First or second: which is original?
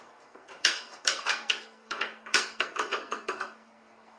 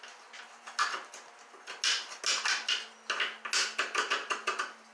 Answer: second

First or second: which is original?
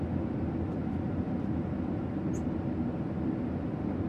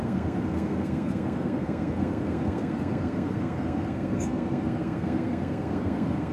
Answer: first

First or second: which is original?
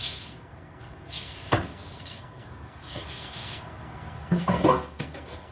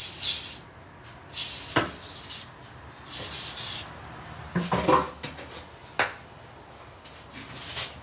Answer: second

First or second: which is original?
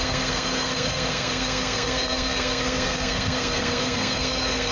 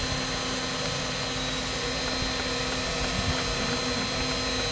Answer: second